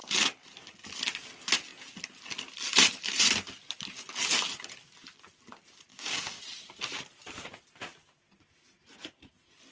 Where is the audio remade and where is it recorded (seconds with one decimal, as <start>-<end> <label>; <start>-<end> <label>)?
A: 0.0-5.9 recorded; 5.9-6.4 remade; 6.4-9.7 recorded